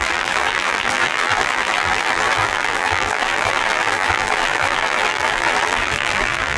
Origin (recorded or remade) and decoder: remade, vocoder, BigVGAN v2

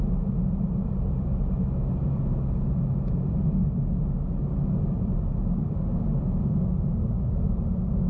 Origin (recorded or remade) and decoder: recorded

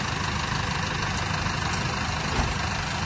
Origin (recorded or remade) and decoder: recorded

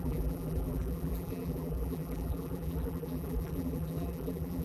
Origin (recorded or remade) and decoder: remade, vocoder, BigVGAN v2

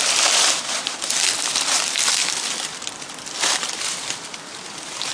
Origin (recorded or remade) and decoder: remade, vocoder, BigVGAN v2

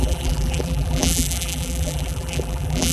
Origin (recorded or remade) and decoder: remade, vocoder, BigVGAN v2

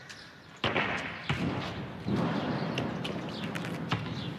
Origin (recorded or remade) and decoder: recorded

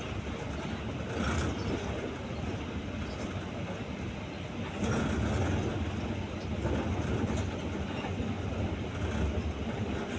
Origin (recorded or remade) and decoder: recorded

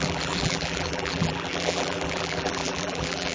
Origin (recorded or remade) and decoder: remade, vocoder, BigVGAN v2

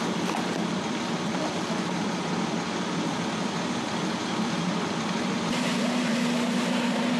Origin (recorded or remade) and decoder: remade, vocoder, BigVGAN v2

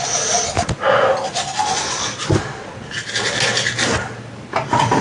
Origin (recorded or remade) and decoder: recorded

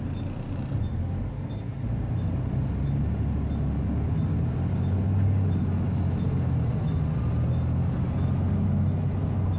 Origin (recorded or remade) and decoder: recorded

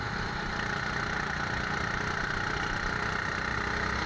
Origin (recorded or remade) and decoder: recorded